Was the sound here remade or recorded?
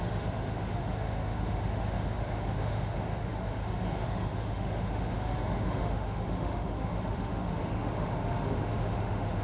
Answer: remade